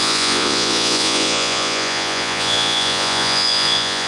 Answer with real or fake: fake